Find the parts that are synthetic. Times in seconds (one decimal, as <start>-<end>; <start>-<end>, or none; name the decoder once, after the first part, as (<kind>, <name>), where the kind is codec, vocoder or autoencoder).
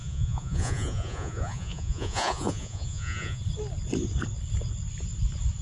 0.0-3.4 (vocoder, Vocos)